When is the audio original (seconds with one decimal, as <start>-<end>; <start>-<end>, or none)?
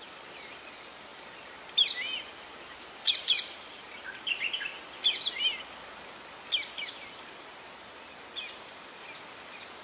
0.0-9.8